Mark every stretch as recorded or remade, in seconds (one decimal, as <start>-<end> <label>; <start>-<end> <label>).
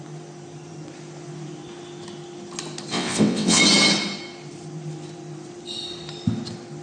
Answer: 0.0-2.9 recorded; 2.9-3.6 remade; 3.6-6.8 recorded